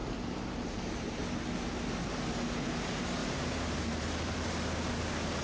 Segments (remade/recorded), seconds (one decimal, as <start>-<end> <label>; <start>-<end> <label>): 0.0-1.2 remade; 1.2-3.2 recorded; 3.2-4.5 remade; 4.5-5.4 recorded